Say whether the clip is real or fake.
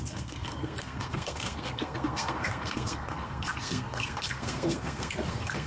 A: fake